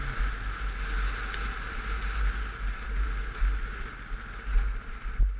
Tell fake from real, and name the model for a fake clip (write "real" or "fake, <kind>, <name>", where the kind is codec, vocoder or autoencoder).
real